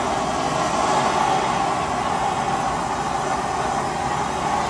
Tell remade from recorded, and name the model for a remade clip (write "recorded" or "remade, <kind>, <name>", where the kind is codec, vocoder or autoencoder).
recorded